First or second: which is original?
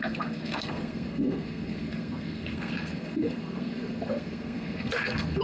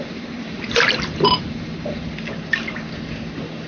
second